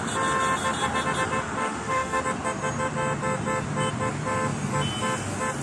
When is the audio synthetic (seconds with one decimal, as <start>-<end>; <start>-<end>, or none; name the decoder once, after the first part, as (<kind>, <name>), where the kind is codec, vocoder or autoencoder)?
1.6-2.2 (autoencoder, DAC-VAE)